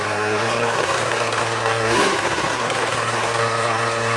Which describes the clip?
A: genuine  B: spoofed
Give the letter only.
B